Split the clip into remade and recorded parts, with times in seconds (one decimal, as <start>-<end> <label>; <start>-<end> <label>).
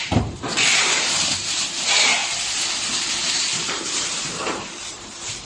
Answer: 0.0-2.2 remade; 2.2-3.0 recorded; 3.0-5.5 remade